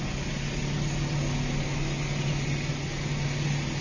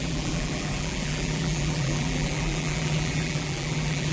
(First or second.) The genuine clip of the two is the first